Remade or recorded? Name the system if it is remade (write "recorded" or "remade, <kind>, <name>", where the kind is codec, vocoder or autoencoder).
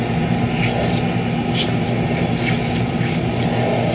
recorded